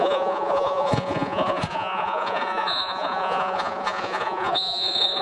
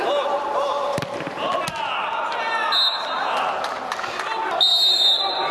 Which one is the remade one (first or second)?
first